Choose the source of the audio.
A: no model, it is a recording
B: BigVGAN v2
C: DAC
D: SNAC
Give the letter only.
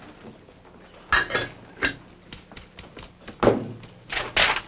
A